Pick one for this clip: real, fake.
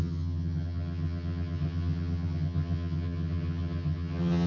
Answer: fake